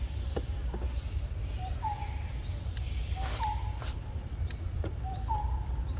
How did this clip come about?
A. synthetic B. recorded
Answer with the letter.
A